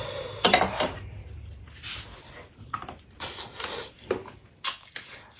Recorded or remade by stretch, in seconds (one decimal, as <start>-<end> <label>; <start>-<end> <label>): 0.0-1.2 remade; 1.2-2.2 recorded; 2.2-4.2 remade; 4.2-5.4 recorded